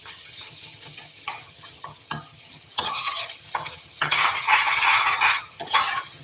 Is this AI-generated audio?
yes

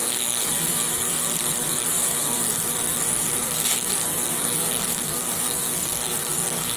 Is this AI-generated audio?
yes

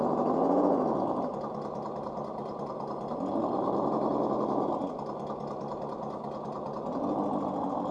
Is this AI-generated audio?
no